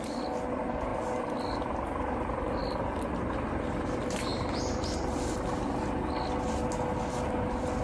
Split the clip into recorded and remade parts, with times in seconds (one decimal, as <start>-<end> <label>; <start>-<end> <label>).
0.0-4.3 recorded; 4.3-5.3 remade; 5.3-7.8 recorded